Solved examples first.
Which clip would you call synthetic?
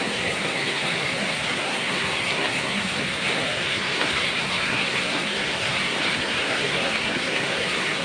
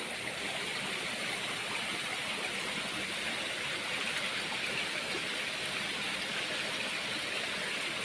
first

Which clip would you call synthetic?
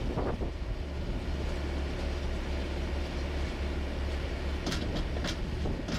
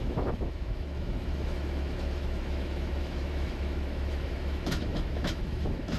second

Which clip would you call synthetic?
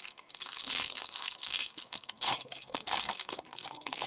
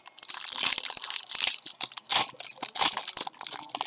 first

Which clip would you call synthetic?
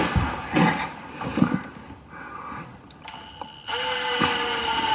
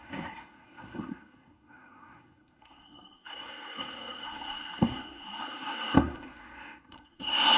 second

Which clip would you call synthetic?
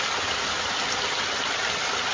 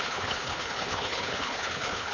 second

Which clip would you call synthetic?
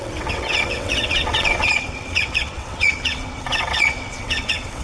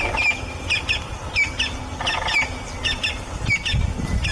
first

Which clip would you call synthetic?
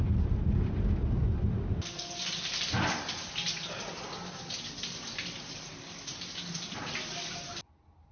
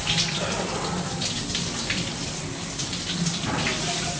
second